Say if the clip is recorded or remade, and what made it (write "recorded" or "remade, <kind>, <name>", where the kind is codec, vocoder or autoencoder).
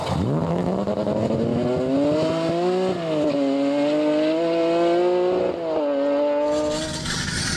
recorded